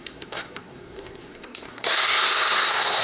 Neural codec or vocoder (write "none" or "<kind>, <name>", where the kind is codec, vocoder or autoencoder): codec, SNAC